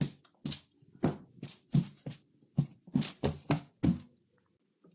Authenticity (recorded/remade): recorded